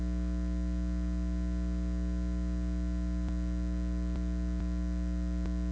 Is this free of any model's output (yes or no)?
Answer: yes